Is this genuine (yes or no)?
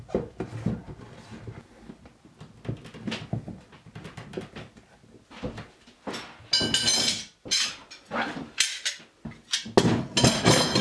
yes